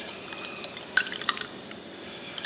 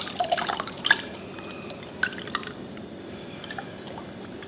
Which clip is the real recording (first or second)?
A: second